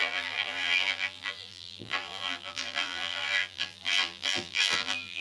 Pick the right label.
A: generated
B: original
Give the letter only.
A